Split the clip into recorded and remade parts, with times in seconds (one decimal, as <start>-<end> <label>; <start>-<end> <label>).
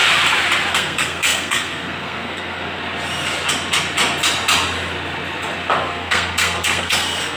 0.0-0.7 recorded; 0.7-2.8 remade; 2.8-5.8 recorded; 5.8-7.4 remade